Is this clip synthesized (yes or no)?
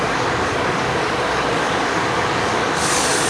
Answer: yes